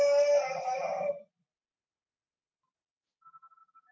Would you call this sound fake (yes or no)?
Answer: no